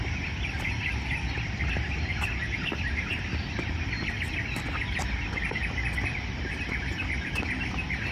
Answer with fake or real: real